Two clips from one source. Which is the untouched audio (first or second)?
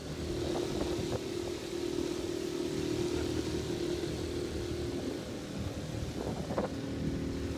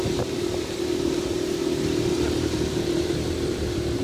first